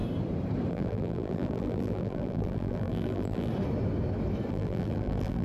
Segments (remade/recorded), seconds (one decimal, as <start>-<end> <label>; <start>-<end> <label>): 0.0-0.7 recorded; 0.7-3.5 remade; 3.5-4.5 recorded; 4.5-5.4 remade